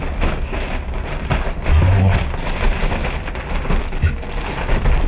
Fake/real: real